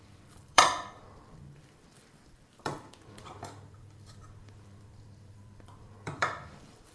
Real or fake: fake